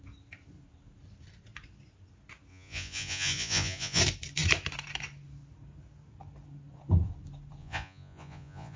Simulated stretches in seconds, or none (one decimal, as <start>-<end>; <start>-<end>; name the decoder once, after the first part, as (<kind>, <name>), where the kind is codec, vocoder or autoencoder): 2.5-4.0 (vocoder, Vocos); 7.6-8.8